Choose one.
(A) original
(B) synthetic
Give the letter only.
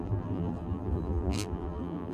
B